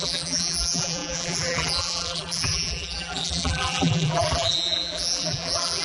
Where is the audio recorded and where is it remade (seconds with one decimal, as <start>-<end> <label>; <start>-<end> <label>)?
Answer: 0.0-5.8 remade